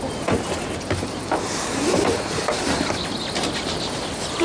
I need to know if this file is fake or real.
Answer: real